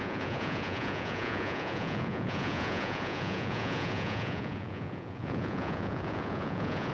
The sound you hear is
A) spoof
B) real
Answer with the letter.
A